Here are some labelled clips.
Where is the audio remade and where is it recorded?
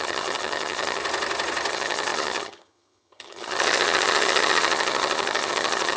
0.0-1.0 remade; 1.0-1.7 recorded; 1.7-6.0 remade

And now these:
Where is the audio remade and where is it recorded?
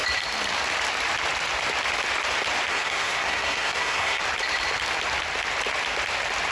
0.0-2.7 recorded; 2.7-4.2 remade; 4.2-6.5 recorded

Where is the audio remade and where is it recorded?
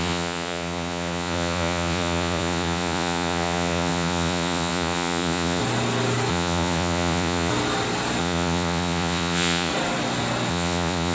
0.0-5.6 remade; 5.6-6.3 recorded; 6.3-7.5 remade; 7.5-8.2 recorded; 8.2-9.7 remade; 9.7-10.5 recorded; 10.5-11.1 remade